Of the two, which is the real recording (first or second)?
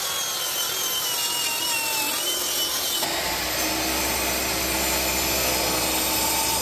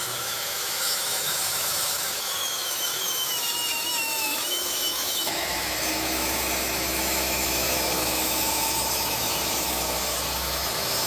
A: first